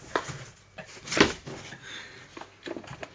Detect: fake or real real